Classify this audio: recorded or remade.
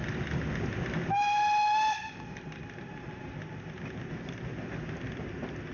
recorded